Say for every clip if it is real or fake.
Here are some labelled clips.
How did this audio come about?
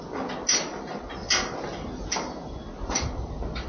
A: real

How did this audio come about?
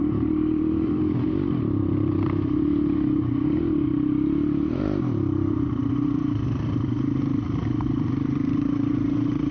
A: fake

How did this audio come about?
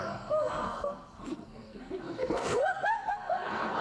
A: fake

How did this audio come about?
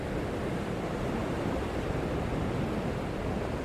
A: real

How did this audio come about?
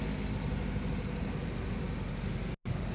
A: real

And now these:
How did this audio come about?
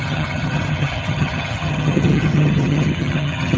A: fake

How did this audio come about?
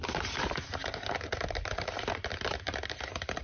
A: real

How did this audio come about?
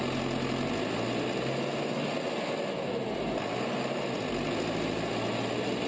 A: real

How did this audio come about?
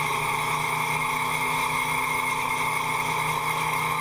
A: fake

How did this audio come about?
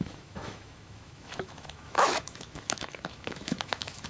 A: fake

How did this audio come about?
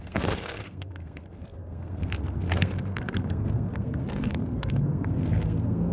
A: fake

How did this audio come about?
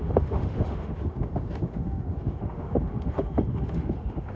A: fake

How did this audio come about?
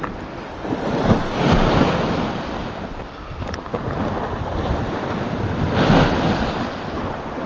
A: real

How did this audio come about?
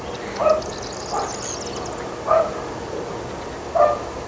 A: real